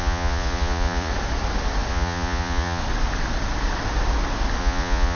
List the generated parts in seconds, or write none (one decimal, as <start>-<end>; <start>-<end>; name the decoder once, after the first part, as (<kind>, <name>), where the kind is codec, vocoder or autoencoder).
0.0-1.1 (vocoder, Vocos); 1.9-2.8; 4.6-5.1